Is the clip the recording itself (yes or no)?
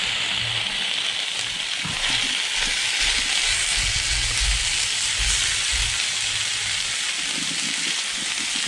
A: yes